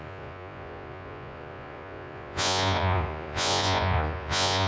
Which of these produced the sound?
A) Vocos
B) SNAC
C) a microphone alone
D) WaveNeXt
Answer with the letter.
A